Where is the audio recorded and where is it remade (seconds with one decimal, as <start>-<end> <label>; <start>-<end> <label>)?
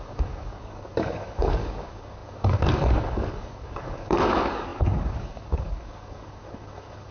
0.0-7.1 remade